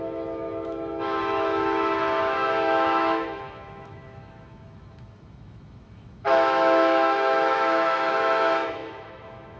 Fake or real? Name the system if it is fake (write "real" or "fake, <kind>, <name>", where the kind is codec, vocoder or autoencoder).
fake, autoencoder, DAC-VAE